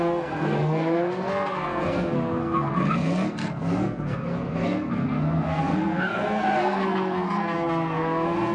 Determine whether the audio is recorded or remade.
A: remade